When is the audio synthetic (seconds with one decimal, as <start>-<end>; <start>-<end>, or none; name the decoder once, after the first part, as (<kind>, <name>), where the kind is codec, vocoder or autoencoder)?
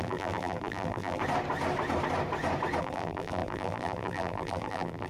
0.0-1.2 (vocoder, BigVGAN v2); 2.8-5.1